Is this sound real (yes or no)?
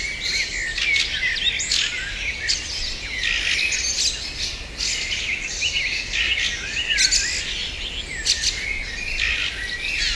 yes